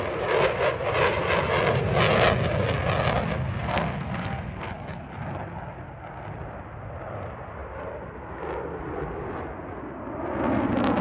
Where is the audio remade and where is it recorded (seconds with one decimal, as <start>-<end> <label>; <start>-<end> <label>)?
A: 0.0-3.6 recorded; 3.6-4.7 remade; 4.7-11.0 recorded